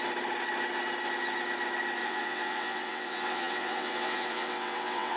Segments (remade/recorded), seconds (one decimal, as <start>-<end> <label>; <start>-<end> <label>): 0.0-2.0 recorded; 2.0-5.2 remade